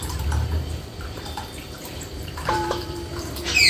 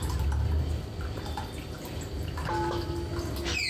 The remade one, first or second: first